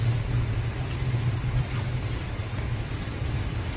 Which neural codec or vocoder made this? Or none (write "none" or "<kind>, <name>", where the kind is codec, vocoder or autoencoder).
none